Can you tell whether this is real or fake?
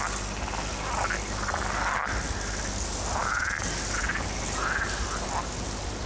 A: real